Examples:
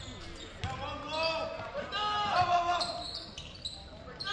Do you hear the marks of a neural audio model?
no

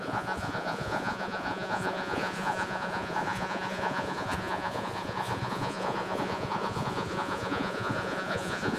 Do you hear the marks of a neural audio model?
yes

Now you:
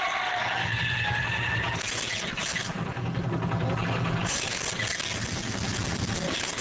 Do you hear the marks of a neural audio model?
no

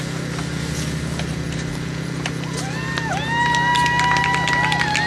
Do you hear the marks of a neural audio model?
no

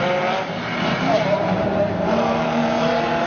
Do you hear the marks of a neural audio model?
yes